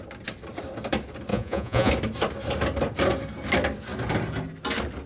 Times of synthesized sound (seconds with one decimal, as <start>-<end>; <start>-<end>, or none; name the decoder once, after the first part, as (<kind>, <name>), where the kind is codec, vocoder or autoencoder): 1.3-1.9 (vocoder, Vocos)

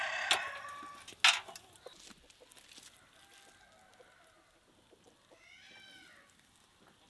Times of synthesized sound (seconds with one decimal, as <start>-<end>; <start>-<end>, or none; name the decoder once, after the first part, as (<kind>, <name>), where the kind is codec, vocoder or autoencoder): none

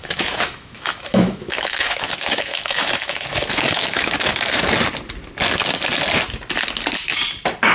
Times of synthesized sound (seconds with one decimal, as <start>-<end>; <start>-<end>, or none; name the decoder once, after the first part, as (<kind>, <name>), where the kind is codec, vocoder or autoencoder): 0.0-4.6 (autoencoder, DAC-VAE)

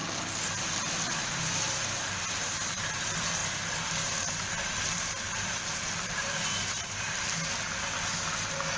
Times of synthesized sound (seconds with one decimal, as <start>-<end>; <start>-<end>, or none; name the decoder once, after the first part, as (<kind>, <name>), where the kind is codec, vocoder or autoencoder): 1.0-3.4 (vocoder, BigVGAN v2); 4.9-8.8

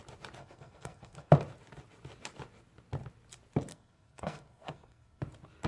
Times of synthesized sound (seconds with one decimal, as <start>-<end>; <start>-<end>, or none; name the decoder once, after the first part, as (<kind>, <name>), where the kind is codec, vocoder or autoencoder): 0.4-1.3 (codec, SNAC); 3.7-5.2

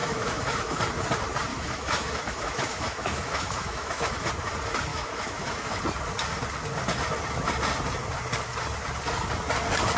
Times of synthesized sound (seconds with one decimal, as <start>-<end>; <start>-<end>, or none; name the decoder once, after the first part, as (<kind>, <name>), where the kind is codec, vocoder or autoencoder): 0.0-0.8 (autoencoder, DAC-VAE); 1.5-4.3; 4.9-5.8